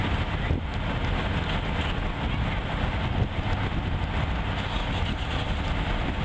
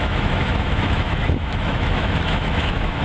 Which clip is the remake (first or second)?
second